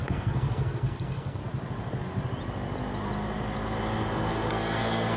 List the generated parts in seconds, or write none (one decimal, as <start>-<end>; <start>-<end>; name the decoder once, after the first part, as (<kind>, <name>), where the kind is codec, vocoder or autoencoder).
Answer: 0.0-1.4 (codec, SNAC); 4.5-5.2